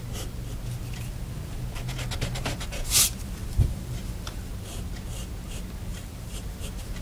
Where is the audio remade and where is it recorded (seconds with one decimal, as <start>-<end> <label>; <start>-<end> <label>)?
0.0-3.4 recorded; 3.4-4.5 remade; 4.5-5.9 recorded; 5.9-6.6 remade; 6.6-7.0 recorded